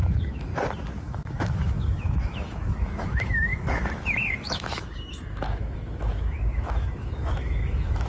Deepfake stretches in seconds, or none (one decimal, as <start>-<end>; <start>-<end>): 0.0-0.5; 1.0-8.1